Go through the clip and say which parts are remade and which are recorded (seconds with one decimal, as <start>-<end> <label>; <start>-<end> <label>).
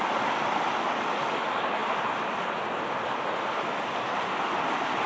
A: 0.0-5.1 recorded